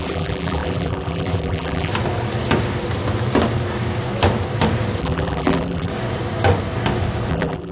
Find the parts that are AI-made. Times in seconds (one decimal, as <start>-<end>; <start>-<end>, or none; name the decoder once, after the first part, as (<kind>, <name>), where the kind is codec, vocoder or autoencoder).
0.0-1.9 (vocoder, BigVGAN v2); 5.0-5.9; 7.3-7.7